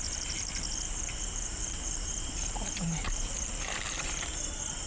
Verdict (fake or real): fake